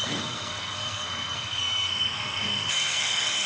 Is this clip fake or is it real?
fake